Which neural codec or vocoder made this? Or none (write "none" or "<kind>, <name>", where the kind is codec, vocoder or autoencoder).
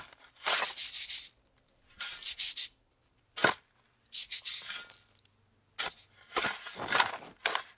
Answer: none